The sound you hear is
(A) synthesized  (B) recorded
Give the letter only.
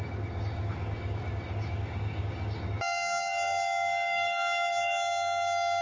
A